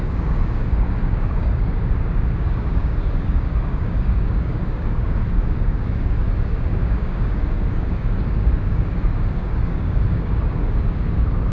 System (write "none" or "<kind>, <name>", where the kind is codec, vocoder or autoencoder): codec, DAC